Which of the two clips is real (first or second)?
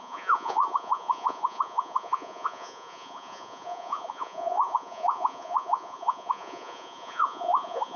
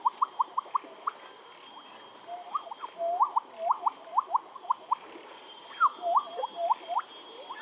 second